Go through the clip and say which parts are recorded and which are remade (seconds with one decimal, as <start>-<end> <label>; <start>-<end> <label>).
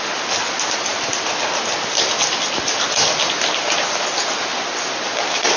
0.0-4.5 recorded; 4.5-5.6 remade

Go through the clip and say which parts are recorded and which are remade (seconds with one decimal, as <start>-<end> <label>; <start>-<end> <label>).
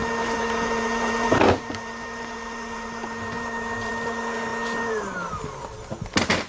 0.0-3.9 remade; 3.9-6.5 recorded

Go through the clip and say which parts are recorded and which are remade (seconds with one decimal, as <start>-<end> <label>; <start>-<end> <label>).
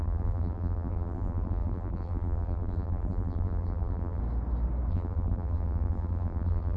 0.0-4.2 remade; 4.2-4.9 recorded; 4.9-6.8 remade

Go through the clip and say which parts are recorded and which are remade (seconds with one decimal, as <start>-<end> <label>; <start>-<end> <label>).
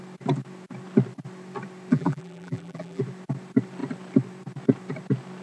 0.0-1.9 recorded; 1.9-3.0 remade; 3.0-5.4 recorded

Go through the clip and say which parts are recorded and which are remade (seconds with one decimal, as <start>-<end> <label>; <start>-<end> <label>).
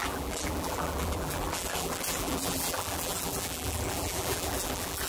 0.0-5.1 remade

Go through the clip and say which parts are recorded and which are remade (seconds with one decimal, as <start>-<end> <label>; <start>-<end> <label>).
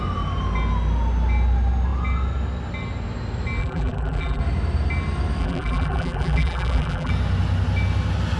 0.0-3.6 recorded; 3.6-4.4 remade; 4.4-5.4 recorded; 5.4-7.1 remade; 7.1-8.4 recorded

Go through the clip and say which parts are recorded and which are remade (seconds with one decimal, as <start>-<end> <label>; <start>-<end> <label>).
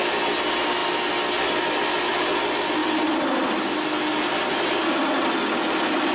0.0-6.1 recorded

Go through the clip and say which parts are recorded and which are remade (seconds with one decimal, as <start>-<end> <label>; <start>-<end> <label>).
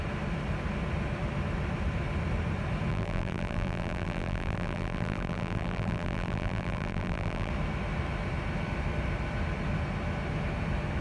0.0-2.9 recorded; 2.9-7.5 remade; 7.5-11.0 recorded